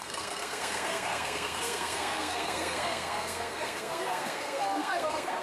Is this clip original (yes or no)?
no